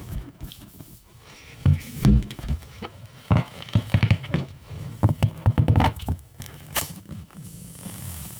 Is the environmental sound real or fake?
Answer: fake